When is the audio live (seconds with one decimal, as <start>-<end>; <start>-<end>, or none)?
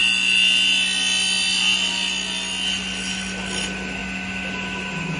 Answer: 0.0-5.2